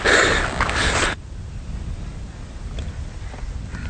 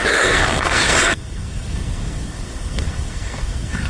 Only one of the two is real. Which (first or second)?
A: first